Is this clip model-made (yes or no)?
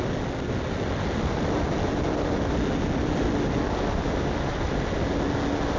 no